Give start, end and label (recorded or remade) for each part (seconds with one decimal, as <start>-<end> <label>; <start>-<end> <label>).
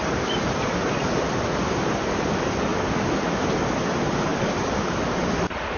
0.0-4.3 recorded; 4.3-5.3 remade; 5.3-5.8 recorded